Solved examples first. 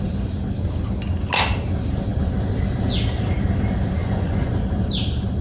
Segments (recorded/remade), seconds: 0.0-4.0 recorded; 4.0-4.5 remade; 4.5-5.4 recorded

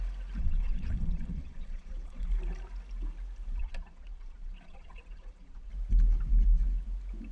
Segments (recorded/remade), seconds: 0.0-0.4 recorded; 0.4-2.3 remade; 2.3-3.6 recorded; 3.6-5.7 remade; 5.7-7.3 recorded